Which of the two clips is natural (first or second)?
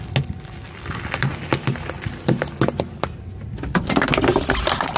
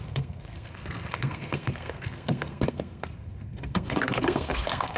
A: first